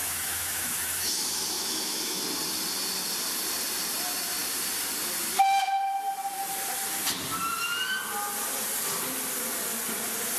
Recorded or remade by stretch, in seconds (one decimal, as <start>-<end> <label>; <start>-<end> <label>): 0.0-2.2 remade; 2.2-10.4 recorded